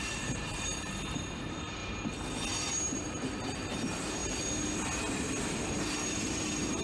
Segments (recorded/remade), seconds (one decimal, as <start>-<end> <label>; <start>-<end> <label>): 0.0-1.8 remade; 1.8-2.7 recorded; 2.7-4.2 remade; 4.2-5.1 recorded; 5.1-6.8 remade